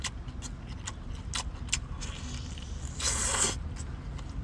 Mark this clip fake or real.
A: real